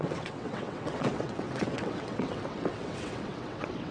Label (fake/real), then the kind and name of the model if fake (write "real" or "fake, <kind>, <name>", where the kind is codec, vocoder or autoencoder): fake, vocoder, WaveNeXt